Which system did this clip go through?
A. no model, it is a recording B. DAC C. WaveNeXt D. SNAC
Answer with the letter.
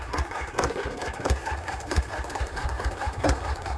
D